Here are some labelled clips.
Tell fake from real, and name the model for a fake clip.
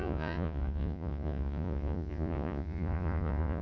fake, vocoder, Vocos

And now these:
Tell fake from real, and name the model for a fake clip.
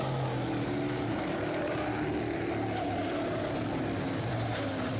real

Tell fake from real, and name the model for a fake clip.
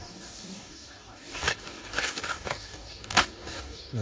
fake, codec, DAC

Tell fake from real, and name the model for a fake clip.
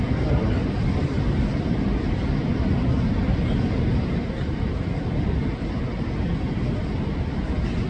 real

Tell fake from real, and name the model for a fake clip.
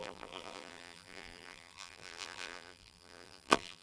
fake, vocoder, BigVGAN v2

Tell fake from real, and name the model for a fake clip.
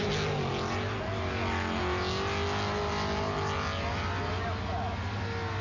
real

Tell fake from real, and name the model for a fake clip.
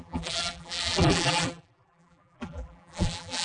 fake, vocoder, BigVGAN v2